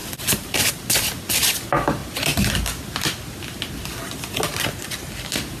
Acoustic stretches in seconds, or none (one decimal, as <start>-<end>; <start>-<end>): 0.0-5.6